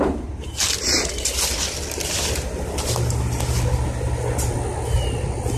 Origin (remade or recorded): recorded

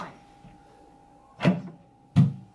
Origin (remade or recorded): recorded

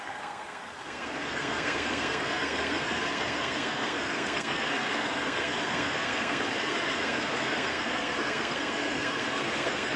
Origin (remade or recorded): remade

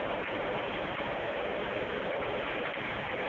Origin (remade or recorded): recorded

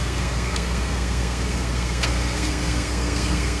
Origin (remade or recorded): remade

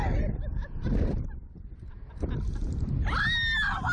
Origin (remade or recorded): recorded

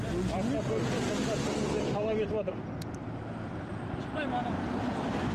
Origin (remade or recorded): recorded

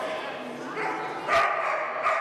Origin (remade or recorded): recorded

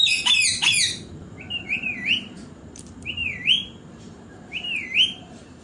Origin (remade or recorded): remade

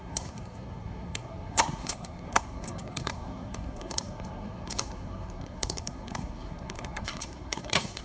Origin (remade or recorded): remade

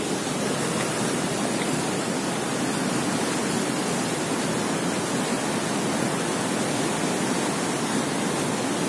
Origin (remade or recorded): recorded